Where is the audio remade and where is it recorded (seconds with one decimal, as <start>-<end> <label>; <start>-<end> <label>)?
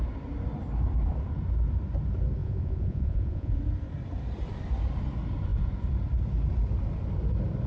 0.0-2.4 recorded; 2.4-3.6 remade; 3.6-7.7 recorded